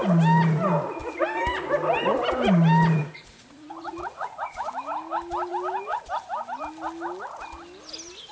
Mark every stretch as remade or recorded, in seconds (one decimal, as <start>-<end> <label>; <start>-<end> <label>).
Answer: 0.0-3.0 recorded; 3.0-4.7 remade; 4.7-8.3 recorded